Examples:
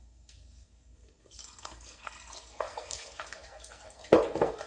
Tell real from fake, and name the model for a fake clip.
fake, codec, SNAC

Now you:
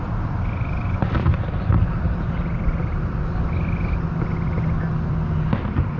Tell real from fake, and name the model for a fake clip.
real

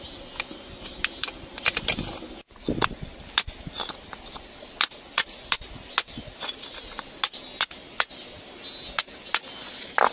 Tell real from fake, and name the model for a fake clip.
real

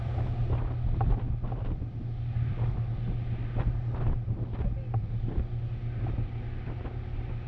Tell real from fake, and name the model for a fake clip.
real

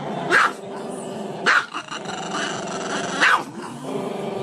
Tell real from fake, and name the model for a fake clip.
real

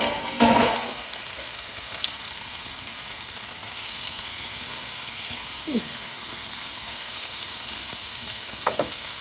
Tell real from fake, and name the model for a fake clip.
fake, codec, SNAC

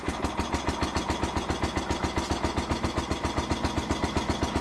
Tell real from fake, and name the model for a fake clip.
real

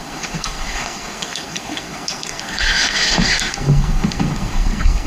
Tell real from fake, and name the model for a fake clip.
fake, codec, SNAC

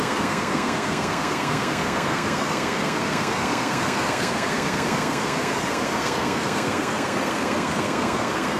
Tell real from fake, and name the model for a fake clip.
fake, codec, SNAC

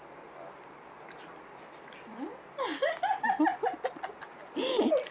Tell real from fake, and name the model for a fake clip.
real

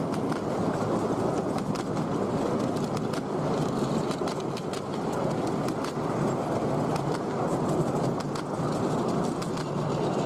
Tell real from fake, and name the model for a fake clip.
real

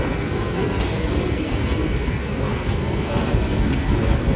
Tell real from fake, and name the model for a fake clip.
fake, codec, SNAC